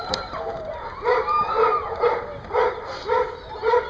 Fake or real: fake